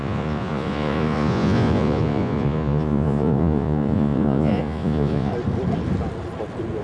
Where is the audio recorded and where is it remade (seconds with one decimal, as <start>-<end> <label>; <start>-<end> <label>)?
0.0-5.3 remade; 5.3-6.8 recorded